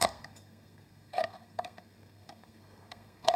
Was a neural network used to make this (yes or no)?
yes